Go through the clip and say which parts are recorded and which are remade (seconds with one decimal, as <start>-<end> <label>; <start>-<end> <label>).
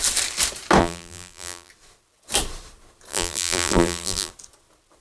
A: 0.0-0.8 recorded; 0.8-1.7 remade; 1.7-3.1 recorded; 3.1-4.3 remade; 4.3-5.0 recorded